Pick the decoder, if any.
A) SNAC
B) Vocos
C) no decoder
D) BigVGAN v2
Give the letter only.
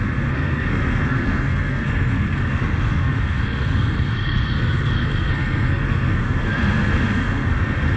A